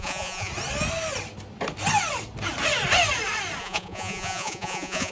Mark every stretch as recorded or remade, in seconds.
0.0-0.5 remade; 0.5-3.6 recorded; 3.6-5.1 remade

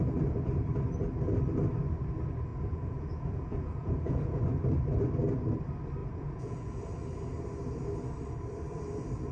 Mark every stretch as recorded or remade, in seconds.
0.0-2.5 recorded; 2.5-4.4 remade; 4.4-6.0 recorded; 6.0-6.8 remade; 6.8-9.3 recorded

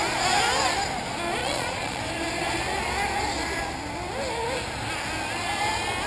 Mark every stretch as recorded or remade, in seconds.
0.0-1.4 recorded; 1.4-2.0 remade; 2.0-6.1 recorded

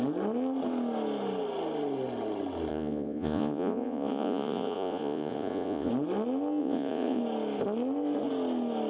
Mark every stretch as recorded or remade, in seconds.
0.0-2.7 recorded; 2.7-5.9 remade; 5.9-6.6 recorded; 6.6-7.2 remade; 7.2-8.9 recorded

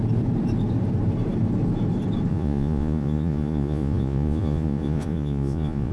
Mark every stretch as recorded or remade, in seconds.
0.0-2.3 recorded; 2.3-5.9 remade